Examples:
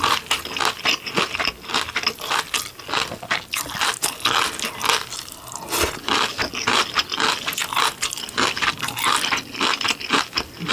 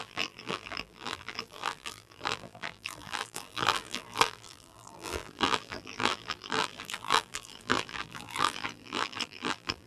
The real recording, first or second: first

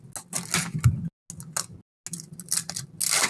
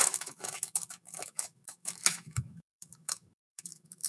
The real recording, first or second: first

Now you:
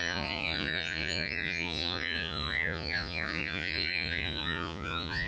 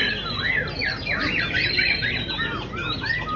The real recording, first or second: second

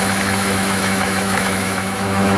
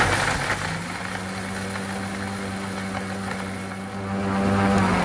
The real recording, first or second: second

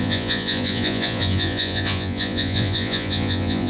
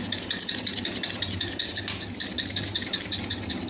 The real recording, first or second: second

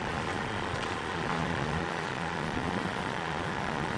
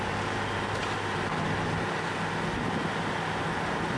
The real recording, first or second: second